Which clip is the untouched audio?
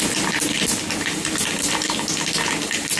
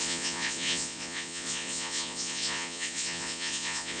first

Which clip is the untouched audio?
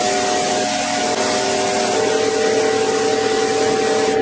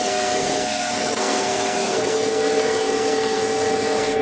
first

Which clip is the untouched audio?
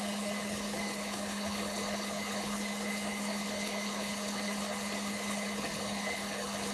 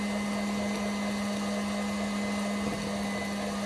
second